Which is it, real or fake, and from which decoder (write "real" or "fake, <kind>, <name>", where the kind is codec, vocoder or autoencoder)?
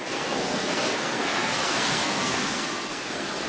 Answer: fake, codec, SNAC